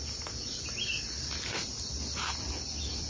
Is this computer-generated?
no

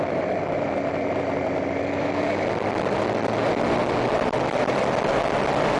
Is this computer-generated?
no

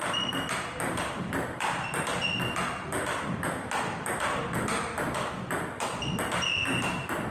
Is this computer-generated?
no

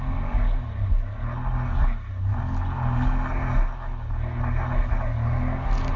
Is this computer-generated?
no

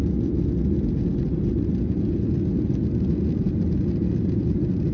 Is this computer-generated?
no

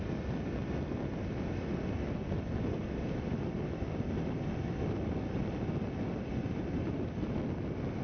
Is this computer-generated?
no